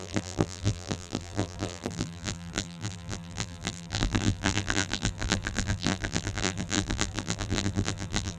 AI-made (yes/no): yes